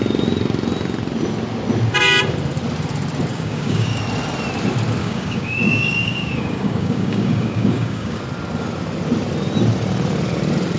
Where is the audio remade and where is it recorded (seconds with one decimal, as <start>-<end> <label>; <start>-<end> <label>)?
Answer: 0.0-3.3 recorded; 3.3-4.0 remade; 4.0-5.0 recorded; 5.0-8.2 remade; 8.2-10.8 recorded